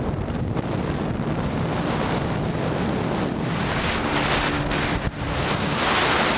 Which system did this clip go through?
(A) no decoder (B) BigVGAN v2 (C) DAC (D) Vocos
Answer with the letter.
A